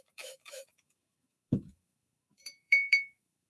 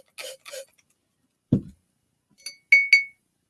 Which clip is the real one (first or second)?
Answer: second